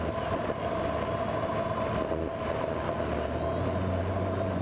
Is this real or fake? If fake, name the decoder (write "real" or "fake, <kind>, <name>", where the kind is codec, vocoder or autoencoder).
real